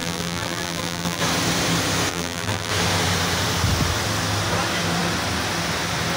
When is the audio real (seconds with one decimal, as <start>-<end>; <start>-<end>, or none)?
1.2-2.1; 2.7-6.2